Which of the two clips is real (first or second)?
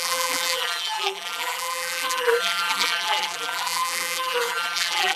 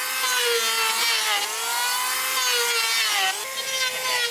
second